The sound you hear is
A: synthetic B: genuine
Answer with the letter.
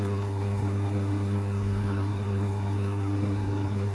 A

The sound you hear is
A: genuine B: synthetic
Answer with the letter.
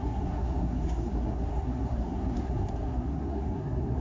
B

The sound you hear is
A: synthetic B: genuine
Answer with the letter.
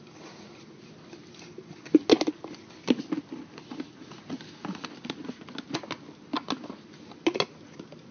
B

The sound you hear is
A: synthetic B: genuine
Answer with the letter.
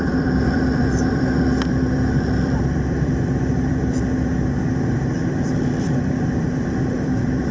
A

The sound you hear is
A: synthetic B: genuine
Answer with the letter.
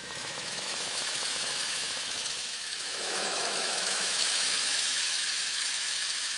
A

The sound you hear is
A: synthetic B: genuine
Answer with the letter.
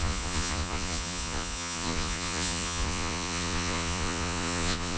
A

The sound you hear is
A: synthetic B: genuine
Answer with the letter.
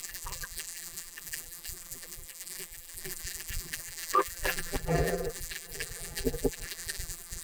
A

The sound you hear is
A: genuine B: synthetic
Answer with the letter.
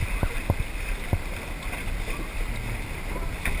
A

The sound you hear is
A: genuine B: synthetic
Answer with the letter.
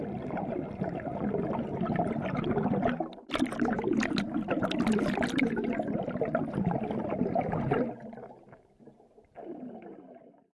A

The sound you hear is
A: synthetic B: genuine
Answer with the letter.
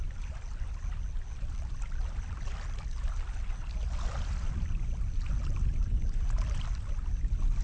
B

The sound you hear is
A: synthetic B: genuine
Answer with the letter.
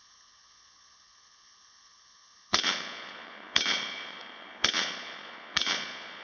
A